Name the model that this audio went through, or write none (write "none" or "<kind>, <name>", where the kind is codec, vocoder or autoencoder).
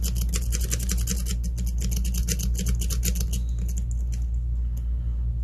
none